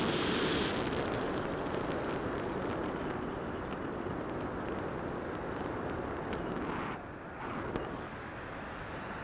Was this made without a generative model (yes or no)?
yes